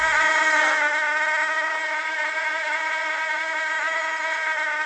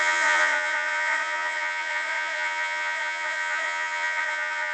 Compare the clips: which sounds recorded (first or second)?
first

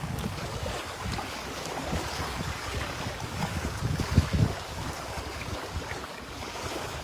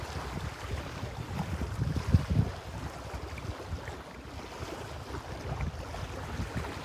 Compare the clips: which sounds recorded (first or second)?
second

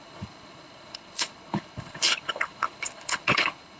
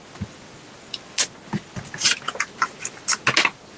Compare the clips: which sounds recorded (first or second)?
second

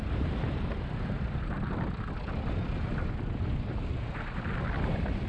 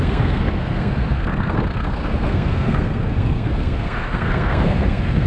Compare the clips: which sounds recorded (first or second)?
first